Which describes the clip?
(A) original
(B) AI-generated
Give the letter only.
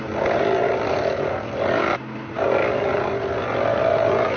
A